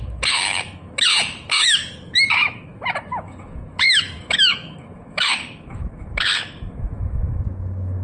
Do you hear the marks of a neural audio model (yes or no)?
yes